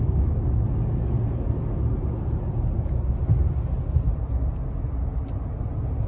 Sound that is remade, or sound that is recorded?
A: recorded